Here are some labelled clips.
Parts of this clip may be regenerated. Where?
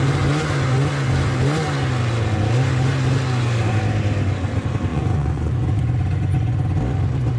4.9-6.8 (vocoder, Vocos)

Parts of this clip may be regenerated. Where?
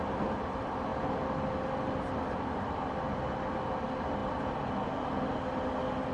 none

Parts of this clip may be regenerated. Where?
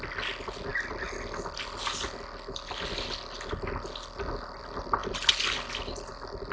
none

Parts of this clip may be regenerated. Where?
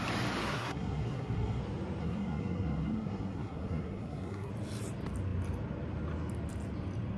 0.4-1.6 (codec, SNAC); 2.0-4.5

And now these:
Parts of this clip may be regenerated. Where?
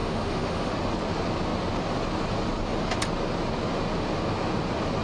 0.0-0.7 (autoencoder, DAC-VAE)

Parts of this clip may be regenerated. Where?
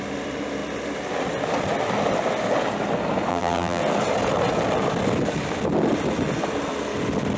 3.3-3.8 (vocoder, BigVGAN v2)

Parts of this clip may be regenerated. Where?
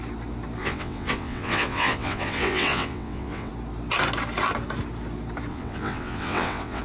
0.6-3.5 (vocoder, WaveNeXt); 5.5-6.8